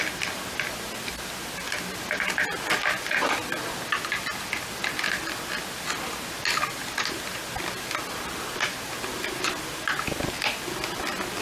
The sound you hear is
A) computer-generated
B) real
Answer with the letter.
B